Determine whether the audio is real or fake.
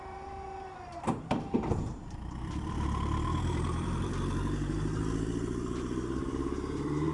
fake